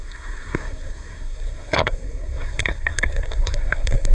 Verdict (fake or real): fake